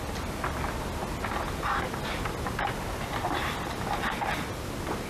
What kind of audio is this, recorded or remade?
recorded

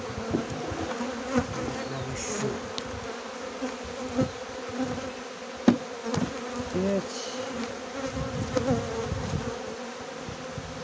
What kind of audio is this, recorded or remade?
recorded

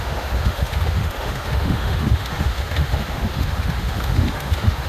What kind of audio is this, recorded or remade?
remade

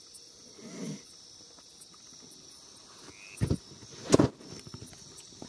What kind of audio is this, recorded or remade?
recorded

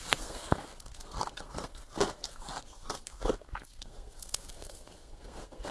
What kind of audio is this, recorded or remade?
remade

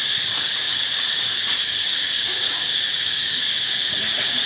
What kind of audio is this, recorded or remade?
remade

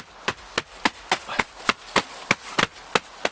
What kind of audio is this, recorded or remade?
recorded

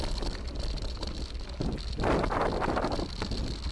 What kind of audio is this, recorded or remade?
recorded